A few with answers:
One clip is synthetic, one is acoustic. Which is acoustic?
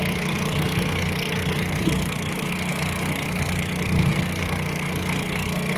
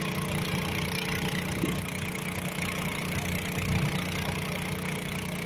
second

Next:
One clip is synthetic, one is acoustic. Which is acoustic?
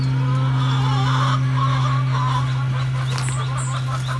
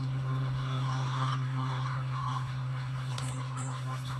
first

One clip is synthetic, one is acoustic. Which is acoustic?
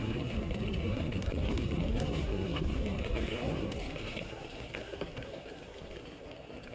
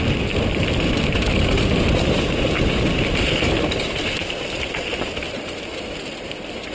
second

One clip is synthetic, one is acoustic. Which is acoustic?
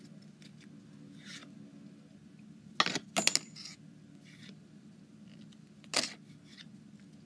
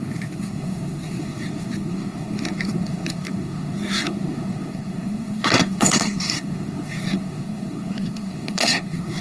first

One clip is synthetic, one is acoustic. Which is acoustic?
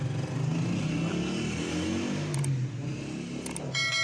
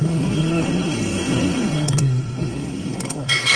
first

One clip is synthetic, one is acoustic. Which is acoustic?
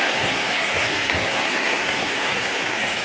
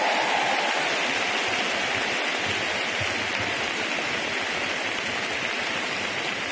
second